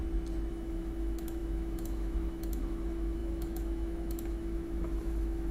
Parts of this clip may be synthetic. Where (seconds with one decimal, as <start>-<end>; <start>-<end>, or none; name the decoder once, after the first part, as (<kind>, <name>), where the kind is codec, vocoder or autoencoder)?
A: 0.5-5.5 (autoencoder, DAC-VAE)